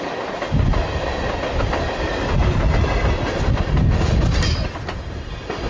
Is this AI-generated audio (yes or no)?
no